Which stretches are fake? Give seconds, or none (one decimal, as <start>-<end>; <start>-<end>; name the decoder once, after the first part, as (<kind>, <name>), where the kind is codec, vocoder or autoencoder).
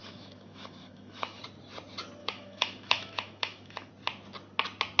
0.0-1.4 (autoencoder, DAC-VAE); 2.2-3.9